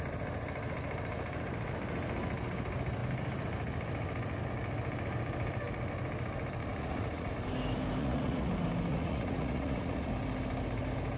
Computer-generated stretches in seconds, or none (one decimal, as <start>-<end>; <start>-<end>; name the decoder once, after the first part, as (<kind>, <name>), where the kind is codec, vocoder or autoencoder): 6.6-7.3 (vocoder, Vocos); 8.0-8.5; 8.9-10.1